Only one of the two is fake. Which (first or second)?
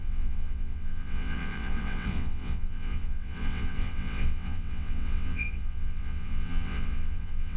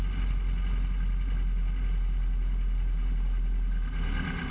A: first